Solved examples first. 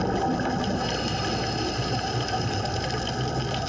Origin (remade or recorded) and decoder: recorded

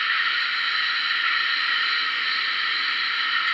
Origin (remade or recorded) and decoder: recorded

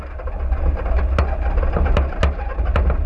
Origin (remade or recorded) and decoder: recorded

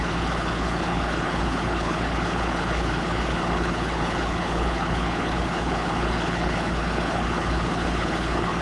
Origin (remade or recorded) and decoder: remade, codec, HILCodec